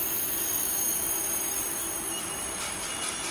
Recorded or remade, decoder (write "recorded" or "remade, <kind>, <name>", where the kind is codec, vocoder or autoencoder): recorded